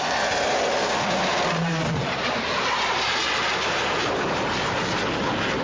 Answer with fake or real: fake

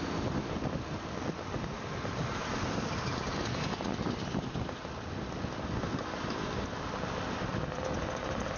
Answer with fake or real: real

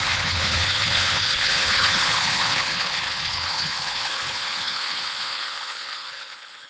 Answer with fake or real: fake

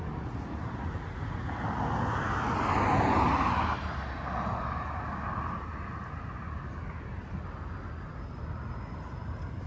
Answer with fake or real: real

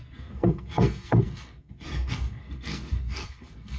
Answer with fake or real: fake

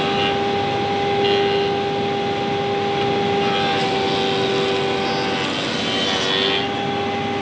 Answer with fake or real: real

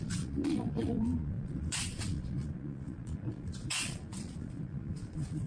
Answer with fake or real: fake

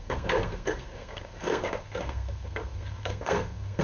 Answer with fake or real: fake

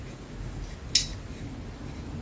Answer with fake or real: real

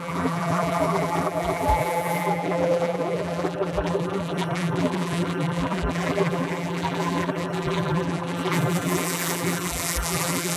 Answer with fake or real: fake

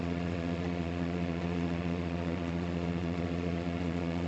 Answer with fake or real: fake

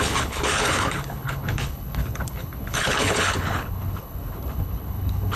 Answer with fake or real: fake